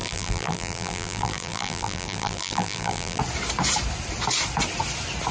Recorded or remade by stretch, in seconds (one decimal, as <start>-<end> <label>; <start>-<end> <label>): 0.0-3.2 remade; 3.2-5.3 recorded